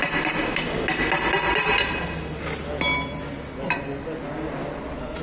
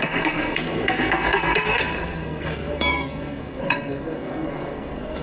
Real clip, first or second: first